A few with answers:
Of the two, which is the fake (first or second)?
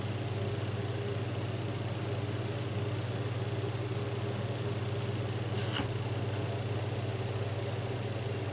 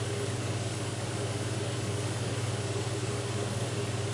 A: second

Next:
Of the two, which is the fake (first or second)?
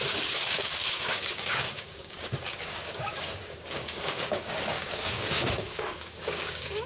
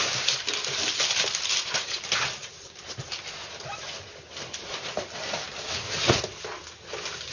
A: first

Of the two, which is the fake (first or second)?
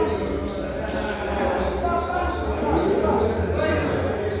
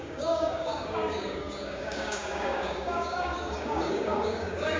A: second